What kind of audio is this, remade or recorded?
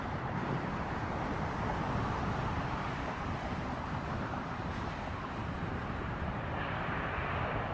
remade